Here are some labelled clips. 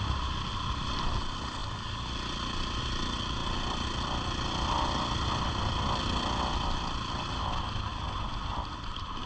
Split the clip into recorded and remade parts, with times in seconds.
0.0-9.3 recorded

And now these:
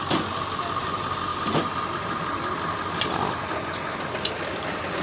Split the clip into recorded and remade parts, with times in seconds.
0.0-5.0 recorded

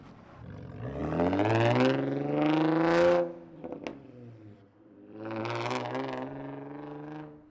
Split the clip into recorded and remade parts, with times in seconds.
0.0-3.9 recorded; 3.9-5.4 remade; 5.4-7.5 recorded

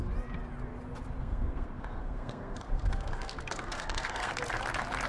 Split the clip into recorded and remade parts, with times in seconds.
0.0-1.2 recorded; 1.2-4.3 remade; 4.3-5.1 recorded

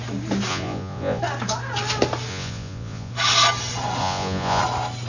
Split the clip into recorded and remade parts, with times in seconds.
0.0-0.5 recorded; 0.5-1.2 remade; 1.2-2.3 recorded; 2.3-3.1 remade; 3.1-4.0 recorded; 4.0-4.6 remade; 4.6-5.1 recorded